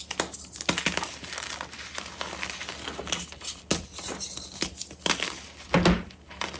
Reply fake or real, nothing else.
real